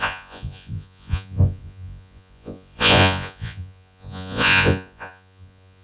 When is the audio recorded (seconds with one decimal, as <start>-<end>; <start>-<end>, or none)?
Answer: none